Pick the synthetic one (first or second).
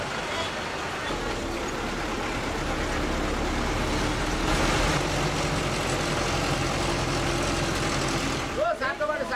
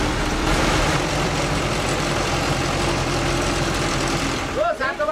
second